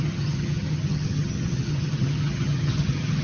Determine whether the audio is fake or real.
fake